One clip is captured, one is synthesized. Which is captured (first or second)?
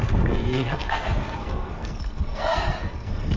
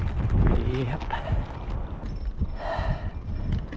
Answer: second